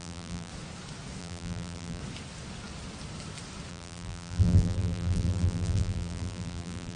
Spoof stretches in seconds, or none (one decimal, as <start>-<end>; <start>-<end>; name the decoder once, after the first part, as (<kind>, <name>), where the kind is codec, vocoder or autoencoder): 0.0-0.5 (vocoder, BigVGAN v2); 1.2-2.0; 3.7-7.0